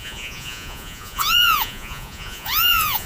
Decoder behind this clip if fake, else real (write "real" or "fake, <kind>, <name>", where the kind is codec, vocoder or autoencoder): fake, vocoder, Vocos